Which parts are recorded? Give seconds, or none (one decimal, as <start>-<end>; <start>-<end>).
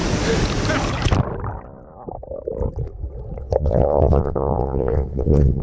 0.0-3.4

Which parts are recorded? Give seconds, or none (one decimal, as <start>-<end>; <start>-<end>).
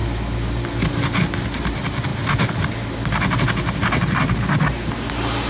0.0-5.5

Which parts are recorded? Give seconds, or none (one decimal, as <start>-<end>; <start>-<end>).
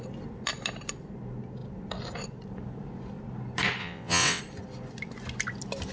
0.0-3.8; 4.4-5.9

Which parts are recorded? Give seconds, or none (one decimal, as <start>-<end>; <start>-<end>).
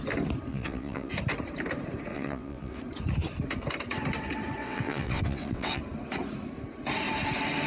0.0-0.5; 1.1-2.1; 2.8-4.6; 5.8-7.7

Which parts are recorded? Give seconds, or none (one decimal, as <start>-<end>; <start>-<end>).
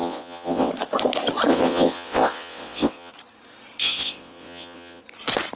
0.7-1.5; 3.1-3.8; 5.0-5.6